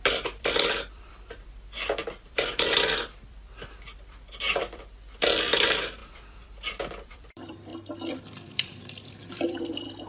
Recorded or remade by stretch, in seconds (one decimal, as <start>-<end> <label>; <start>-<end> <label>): 0.0-7.7 remade; 7.7-8.2 recorded; 8.2-10.1 remade